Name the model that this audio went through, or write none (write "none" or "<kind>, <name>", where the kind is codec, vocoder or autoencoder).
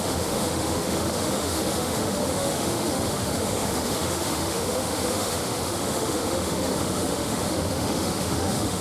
autoencoder, DAC-VAE